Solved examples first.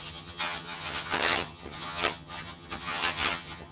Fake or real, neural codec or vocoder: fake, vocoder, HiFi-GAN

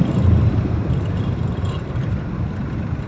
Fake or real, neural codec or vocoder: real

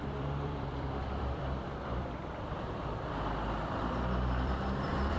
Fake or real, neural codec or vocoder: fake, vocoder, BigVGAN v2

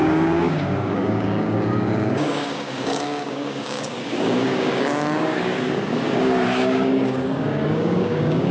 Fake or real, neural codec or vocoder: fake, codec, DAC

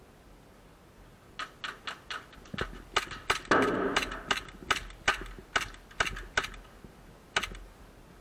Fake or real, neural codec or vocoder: real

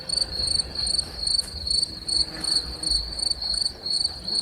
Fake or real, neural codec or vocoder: real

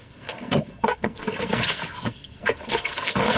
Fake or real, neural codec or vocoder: fake, codec, SNAC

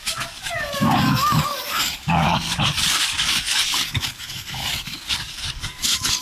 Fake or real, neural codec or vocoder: fake, codec, DAC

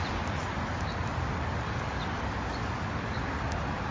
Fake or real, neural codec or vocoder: real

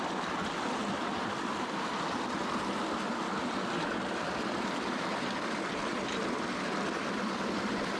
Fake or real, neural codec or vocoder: real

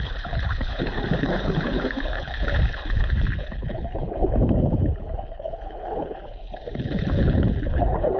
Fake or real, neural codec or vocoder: fake, codec, HILCodec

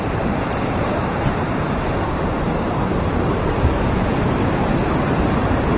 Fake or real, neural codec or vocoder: fake, vocoder, BigVGAN v2